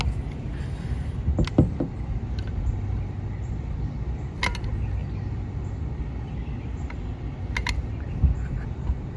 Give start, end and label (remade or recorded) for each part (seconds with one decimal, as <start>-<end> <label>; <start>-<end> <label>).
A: 0.0-9.2 recorded